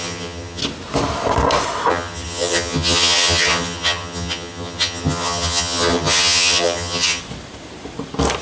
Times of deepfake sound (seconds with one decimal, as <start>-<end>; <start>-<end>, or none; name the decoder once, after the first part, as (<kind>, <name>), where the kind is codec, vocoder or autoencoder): 0.0-0.6 (vocoder, HiFi-GAN); 1.9-7.2